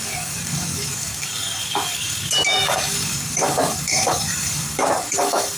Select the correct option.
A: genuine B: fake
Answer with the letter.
B